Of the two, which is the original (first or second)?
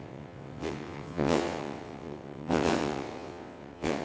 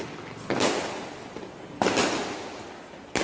second